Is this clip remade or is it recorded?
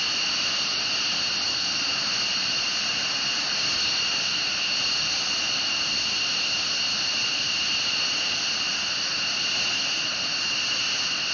recorded